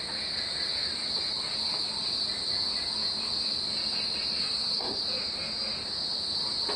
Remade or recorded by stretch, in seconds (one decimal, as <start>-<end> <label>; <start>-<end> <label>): 0.0-4.4 recorded; 4.4-5.0 remade; 5.0-6.8 recorded